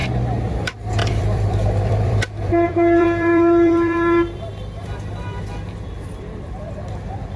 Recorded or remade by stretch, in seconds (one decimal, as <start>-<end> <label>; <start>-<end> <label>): 0.0-1.0 recorded; 1.0-5.4 remade; 5.4-7.4 recorded